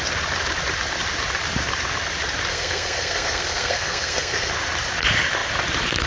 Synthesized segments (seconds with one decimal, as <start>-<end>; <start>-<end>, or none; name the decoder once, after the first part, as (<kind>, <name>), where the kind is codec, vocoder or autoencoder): 2.5-4.5 (codec, SNAC)